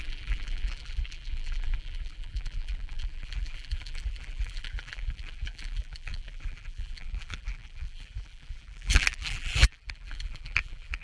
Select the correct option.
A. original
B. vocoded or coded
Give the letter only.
B